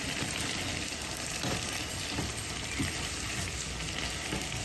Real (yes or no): yes